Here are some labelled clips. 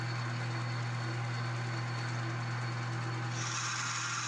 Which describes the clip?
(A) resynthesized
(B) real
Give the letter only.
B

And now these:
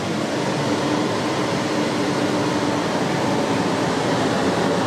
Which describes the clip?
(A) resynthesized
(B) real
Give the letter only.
B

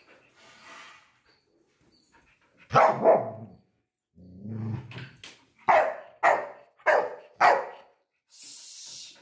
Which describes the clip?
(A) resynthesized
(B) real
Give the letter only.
B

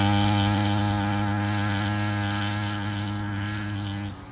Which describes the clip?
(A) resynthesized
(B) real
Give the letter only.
B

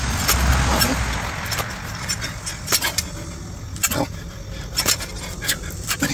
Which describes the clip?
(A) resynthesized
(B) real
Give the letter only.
B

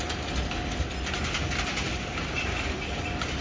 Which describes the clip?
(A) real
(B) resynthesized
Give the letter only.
A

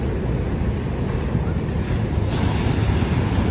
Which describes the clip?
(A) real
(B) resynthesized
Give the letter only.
A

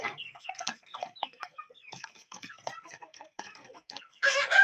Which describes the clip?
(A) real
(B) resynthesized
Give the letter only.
B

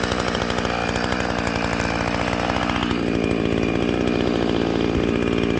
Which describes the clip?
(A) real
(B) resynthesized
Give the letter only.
A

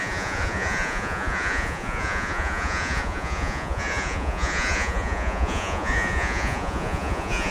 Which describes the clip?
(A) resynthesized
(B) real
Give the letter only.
A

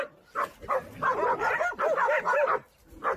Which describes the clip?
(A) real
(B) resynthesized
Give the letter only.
A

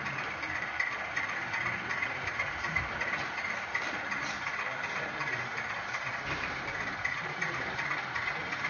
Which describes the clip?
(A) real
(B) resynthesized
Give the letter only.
B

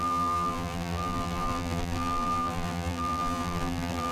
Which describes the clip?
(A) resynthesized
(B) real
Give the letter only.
A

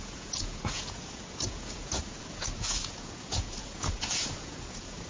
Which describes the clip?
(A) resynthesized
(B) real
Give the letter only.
A